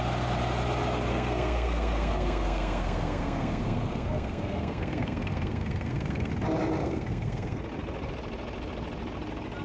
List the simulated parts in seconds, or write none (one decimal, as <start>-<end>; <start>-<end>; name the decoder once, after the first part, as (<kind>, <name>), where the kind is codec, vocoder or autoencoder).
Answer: 1.1-6.3 (codec, SNAC); 6.8-7.6